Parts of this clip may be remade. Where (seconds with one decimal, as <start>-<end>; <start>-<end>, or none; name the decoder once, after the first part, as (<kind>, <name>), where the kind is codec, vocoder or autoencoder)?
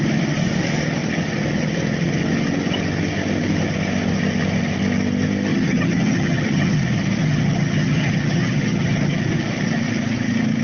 5.5-6.8 (vocoder, HiFi-GAN); 7.2-9.2